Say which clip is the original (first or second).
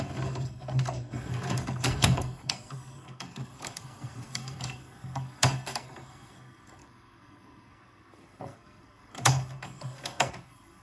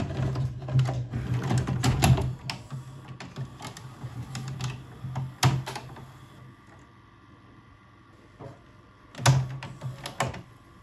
second